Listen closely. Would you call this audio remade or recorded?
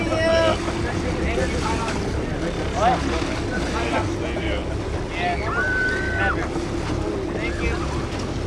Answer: recorded